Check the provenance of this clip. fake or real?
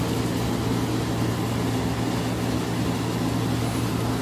real